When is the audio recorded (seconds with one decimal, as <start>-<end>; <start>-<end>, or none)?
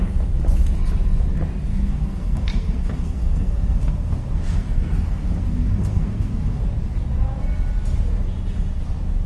0.0-1.7; 6.6-9.3